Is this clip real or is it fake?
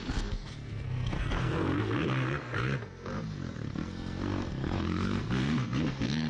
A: fake